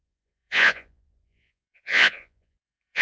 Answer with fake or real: fake